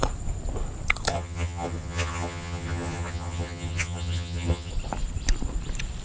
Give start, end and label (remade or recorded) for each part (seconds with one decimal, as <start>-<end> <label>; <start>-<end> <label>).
0.0-1.1 recorded; 1.1-4.7 remade; 4.7-6.0 recorded